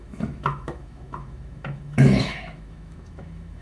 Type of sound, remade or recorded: remade